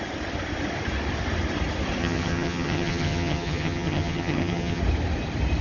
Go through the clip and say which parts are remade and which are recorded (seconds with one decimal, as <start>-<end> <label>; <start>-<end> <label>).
0.0-2.0 recorded; 2.0-4.8 remade; 4.8-5.6 recorded